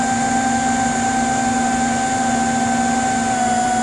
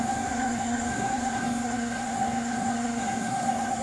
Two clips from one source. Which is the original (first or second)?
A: first